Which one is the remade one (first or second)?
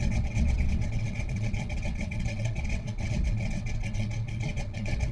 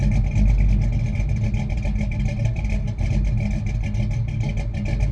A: first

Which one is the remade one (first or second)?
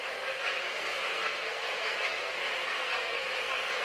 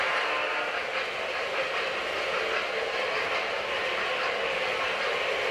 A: first